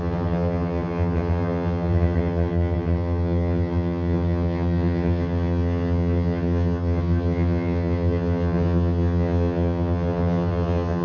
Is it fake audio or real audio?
fake